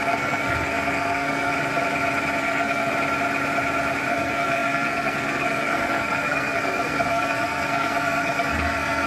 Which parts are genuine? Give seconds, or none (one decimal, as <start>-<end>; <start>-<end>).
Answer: 1.5-2.4; 2.9-4.1